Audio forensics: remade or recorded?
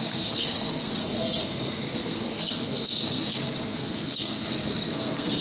remade